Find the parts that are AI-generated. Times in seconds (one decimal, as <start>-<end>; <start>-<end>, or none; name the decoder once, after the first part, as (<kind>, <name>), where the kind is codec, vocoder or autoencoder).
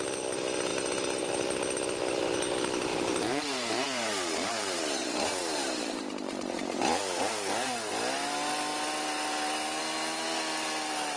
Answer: 2.9-6.8 (vocoder, BigVGAN v2)